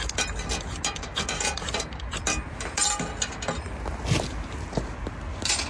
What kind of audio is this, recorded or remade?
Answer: recorded